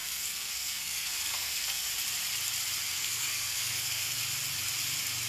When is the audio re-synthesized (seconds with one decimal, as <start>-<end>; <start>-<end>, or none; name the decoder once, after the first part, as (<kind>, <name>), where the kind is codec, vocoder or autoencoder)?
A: 0.0-1.9 (codec, SNAC); 3.0-4.2